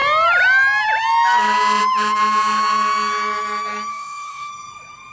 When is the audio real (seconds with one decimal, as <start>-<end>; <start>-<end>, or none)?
0.0-3.9; 4.5-5.1